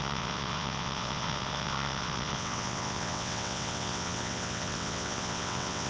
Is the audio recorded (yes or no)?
no